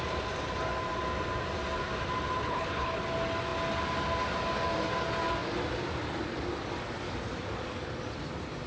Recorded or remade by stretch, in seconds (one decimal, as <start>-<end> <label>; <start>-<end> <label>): 0.0-2.4 recorded; 2.4-3.0 remade; 3.0-8.7 recorded